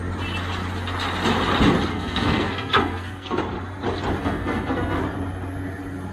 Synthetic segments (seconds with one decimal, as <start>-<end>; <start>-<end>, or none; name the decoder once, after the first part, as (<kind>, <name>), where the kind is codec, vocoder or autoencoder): 1.9-3.4 (codec, SNAC); 4.2-5.0